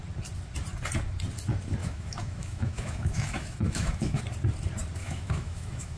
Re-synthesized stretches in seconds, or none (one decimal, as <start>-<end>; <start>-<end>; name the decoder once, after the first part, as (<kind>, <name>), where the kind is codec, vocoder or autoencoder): 1.8-4.2 (autoencoder, DAC-VAE); 5.0-6.0